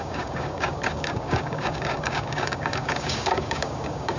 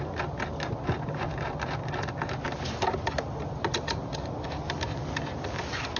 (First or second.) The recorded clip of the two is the second